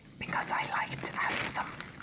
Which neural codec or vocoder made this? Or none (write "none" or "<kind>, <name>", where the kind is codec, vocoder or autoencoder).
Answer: none